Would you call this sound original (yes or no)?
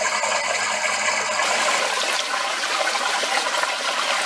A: yes